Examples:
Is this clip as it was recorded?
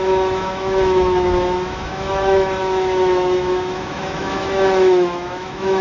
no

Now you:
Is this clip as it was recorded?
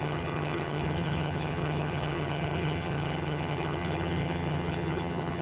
no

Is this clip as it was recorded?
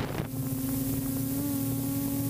yes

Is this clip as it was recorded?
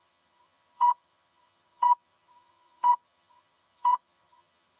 no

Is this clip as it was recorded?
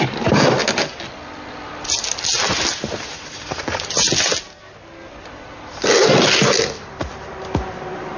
yes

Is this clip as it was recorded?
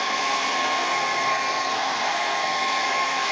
no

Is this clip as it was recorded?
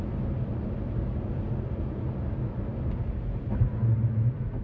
yes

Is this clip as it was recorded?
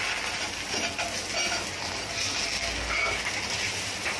yes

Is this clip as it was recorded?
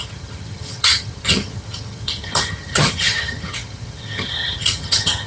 no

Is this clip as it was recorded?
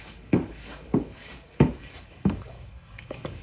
no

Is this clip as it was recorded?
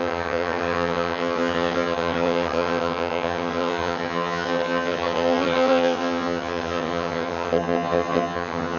no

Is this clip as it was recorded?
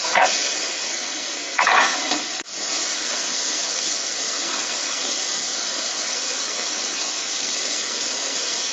no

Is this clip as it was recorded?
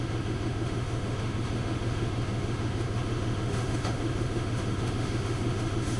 no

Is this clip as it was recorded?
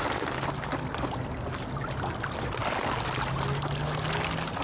yes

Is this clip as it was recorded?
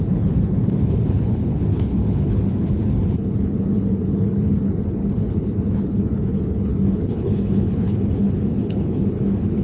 no